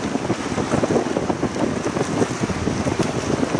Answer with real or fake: real